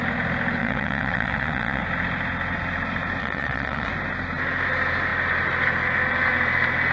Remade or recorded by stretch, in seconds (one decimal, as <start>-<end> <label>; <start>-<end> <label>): 0.0-0.6 recorded; 0.6-1.8 remade; 1.8-3.2 recorded; 3.2-3.9 remade; 3.9-6.9 recorded